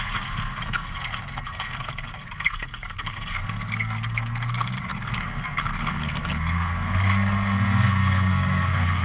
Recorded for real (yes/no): no